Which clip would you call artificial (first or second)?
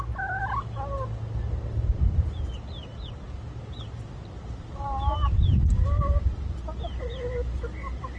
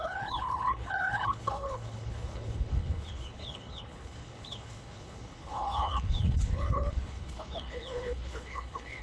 second